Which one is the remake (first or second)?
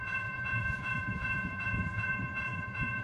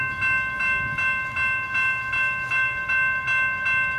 first